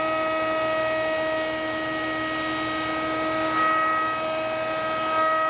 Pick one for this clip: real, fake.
real